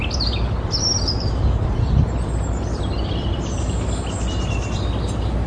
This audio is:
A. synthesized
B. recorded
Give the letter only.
B